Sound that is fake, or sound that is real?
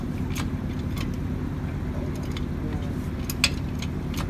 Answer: real